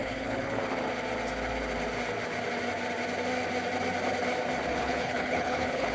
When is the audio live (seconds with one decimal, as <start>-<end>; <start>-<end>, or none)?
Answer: 0.6-4.7